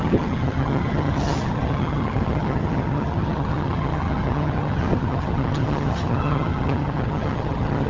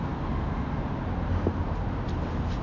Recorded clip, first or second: second